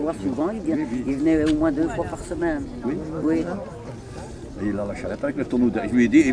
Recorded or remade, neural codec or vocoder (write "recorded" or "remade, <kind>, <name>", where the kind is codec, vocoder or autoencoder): recorded